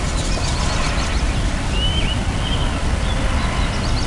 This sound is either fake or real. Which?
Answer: real